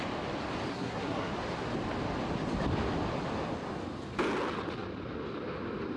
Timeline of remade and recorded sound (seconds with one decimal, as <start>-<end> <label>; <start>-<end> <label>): 0.0-0.7 recorded; 0.7-1.3 remade; 1.3-6.0 recorded